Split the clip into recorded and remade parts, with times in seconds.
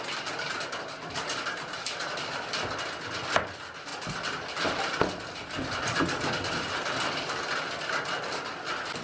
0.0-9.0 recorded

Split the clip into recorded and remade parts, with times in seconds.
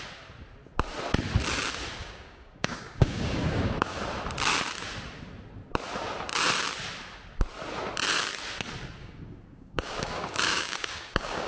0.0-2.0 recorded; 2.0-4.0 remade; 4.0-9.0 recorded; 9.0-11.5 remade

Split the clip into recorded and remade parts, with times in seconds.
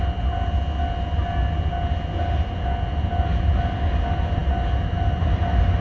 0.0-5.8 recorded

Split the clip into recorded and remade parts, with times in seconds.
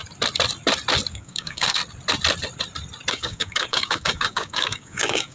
0.0-1.1 recorded; 1.1-1.8 remade; 1.8-3.1 recorded; 3.1-5.3 remade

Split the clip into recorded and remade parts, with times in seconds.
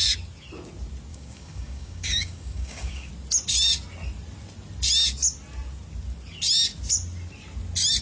0.0-1.1 recorded; 1.1-3.1 remade; 3.1-8.0 recorded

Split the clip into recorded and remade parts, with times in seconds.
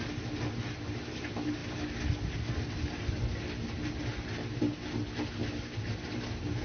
0.0-6.6 recorded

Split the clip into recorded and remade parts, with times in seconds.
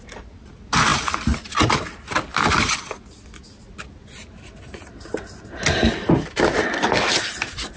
0.0-7.8 recorded